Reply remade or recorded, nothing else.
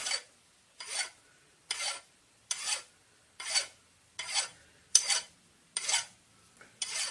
recorded